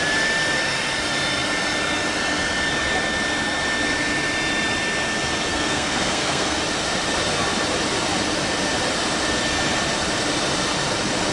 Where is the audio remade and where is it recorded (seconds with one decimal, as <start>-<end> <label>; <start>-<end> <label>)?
0.0-5.5 recorded; 5.5-6.6 remade; 6.6-11.3 recorded